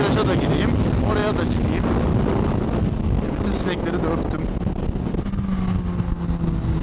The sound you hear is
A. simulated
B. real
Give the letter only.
B